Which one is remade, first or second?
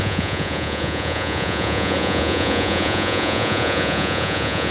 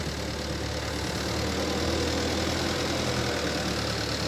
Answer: first